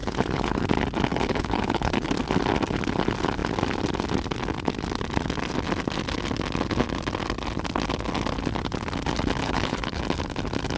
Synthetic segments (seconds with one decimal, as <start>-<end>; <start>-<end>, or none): 0.0-0.6; 1.1-2.1; 9.4-10.0